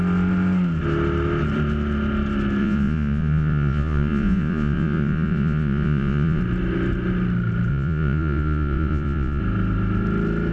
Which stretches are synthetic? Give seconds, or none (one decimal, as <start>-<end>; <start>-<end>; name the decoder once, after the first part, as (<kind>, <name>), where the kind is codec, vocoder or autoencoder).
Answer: 2.6-6.4 (vocoder, Vocos); 7.7-9.4